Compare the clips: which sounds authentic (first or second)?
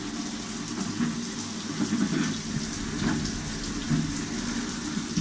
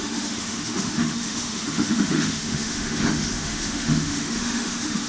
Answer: first